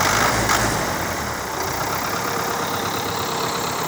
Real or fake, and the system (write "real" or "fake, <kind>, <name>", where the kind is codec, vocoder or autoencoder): fake, vocoder, BigVGAN v2